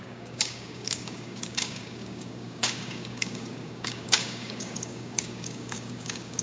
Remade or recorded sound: remade